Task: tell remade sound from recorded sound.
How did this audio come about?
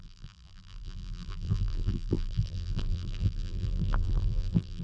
remade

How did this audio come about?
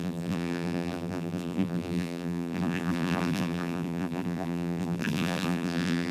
remade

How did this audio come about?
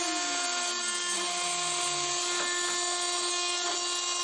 recorded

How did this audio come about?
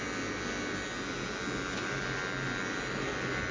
recorded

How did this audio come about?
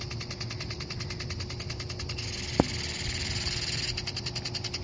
recorded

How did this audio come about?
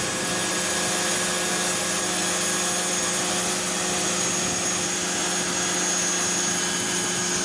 recorded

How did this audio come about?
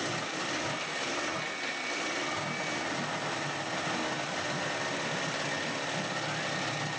recorded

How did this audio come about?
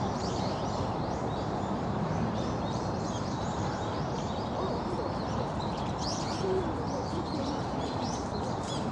remade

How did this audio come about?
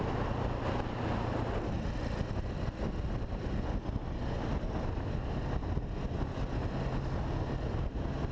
recorded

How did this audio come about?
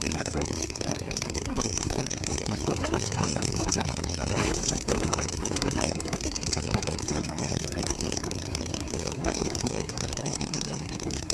remade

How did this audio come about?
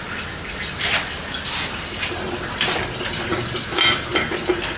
recorded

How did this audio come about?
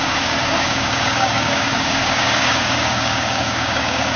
remade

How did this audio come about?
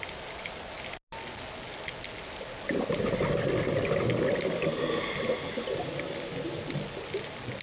recorded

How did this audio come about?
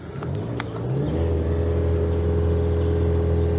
recorded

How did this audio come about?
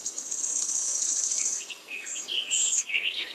remade